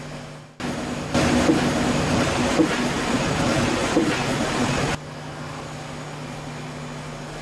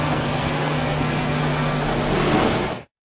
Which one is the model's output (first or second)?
second